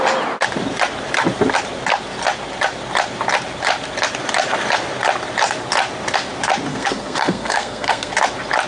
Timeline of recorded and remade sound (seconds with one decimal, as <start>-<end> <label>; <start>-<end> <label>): 0.0-6.7 recorded; 6.7-8.1 remade; 8.1-8.7 recorded